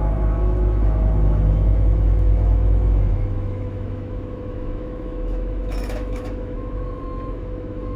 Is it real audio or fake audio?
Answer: fake